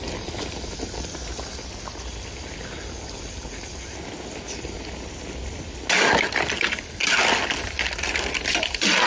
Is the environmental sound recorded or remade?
recorded